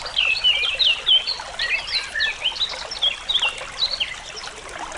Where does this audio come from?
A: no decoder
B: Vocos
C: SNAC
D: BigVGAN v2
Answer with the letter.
A